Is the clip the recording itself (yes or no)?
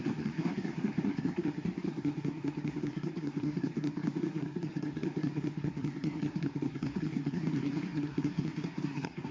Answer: no